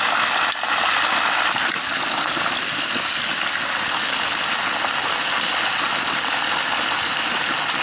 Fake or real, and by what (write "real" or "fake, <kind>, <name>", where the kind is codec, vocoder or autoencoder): real